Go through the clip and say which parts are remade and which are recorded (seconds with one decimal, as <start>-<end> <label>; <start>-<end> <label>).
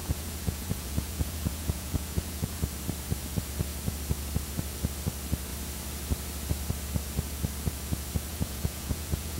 0.0-2.6 remade; 2.6-8.3 recorded; 8.3-9.4 remade